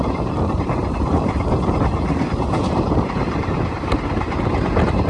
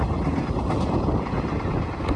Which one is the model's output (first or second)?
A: first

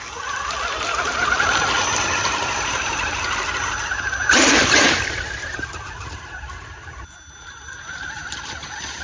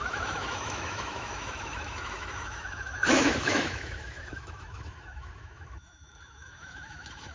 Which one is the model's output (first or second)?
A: second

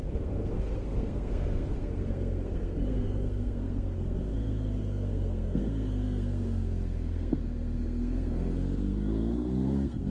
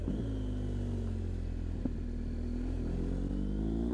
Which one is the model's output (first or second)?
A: first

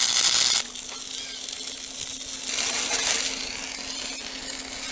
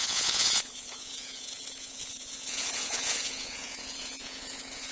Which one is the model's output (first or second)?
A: second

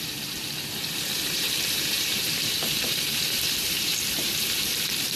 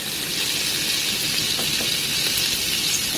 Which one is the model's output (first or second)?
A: first